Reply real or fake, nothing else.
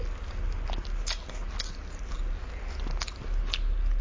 real